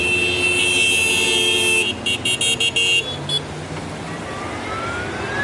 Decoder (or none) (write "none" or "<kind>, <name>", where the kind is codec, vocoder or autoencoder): none